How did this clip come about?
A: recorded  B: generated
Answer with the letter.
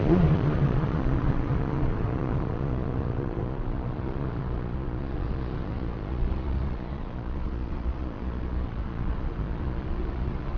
B